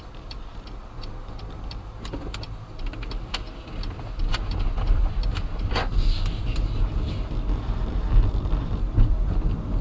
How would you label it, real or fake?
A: fake